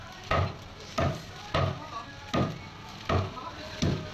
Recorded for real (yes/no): yes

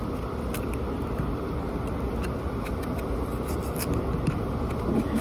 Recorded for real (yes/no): yes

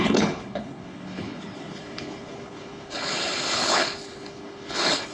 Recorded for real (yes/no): no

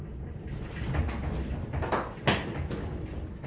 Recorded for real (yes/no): yes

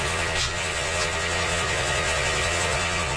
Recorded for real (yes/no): no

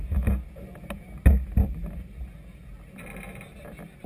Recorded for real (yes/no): yes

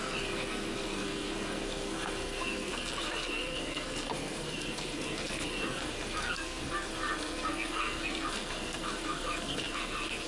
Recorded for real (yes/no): no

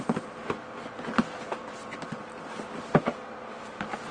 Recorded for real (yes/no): yes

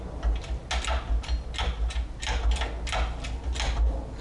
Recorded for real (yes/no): yes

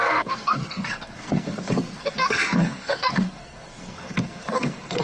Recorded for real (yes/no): no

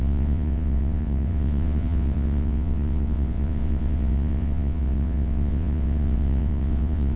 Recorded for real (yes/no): no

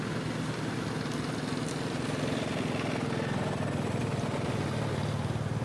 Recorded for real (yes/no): yes